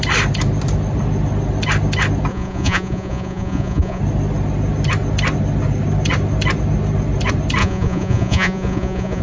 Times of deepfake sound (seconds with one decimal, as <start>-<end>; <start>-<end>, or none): 2.3-4.0; 7.6-9.2